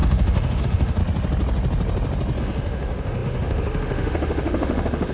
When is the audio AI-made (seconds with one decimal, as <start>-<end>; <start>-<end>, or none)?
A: 0.0-1.0; 2.4-5.1